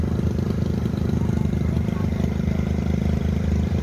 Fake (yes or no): no